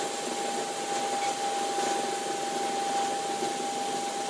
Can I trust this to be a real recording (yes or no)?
yes